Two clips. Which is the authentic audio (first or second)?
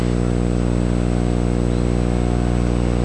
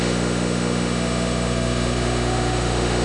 first